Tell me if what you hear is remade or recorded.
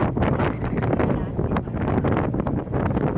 recorded